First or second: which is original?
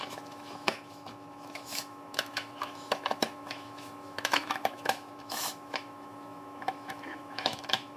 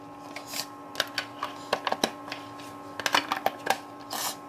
second